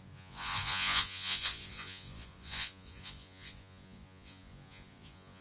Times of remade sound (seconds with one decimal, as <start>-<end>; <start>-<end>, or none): 0.0-5.4